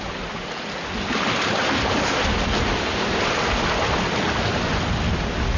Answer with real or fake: real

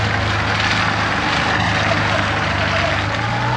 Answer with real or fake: real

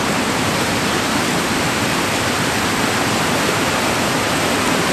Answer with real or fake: fake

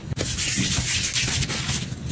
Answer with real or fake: real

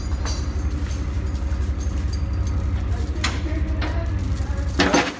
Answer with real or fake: real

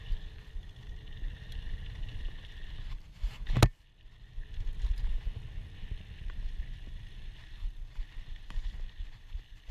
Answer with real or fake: real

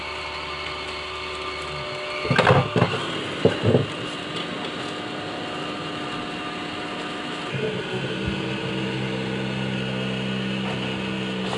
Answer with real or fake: real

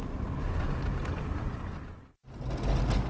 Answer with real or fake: real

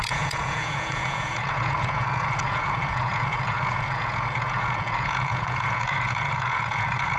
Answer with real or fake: fake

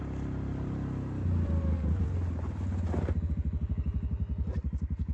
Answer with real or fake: real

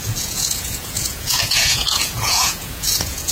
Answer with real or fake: fake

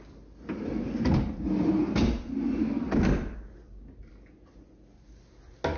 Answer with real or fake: real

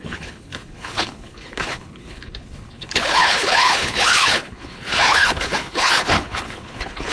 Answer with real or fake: fake